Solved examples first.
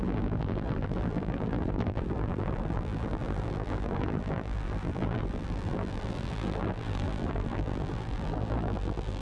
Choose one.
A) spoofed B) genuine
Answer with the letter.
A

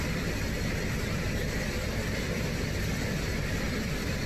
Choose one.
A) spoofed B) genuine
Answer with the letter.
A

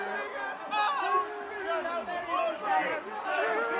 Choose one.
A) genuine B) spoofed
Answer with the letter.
A